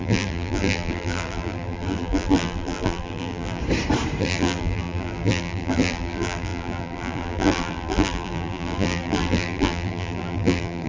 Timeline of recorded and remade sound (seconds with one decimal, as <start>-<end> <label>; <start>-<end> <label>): 0.0-3.6 remade; 3.6-4.2 recorded; 4.2-10.9 remade